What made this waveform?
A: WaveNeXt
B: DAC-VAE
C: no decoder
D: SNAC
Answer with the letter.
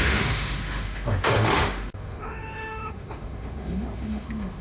B